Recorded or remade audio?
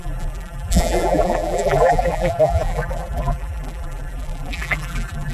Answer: remade